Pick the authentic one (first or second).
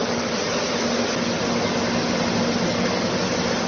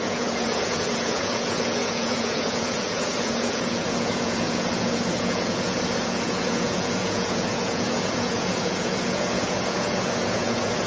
first